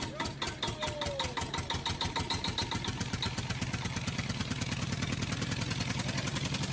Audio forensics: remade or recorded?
recorded